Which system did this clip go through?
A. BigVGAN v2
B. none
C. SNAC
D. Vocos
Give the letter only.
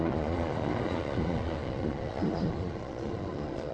D